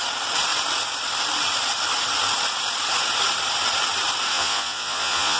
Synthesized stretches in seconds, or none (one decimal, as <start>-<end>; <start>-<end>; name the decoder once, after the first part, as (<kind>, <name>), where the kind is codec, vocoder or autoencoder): 4.3-5.4 (vocoder, Vocos)